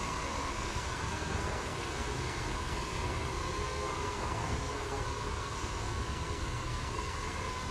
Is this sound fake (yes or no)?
yes